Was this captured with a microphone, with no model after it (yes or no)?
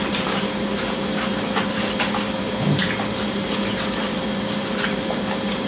no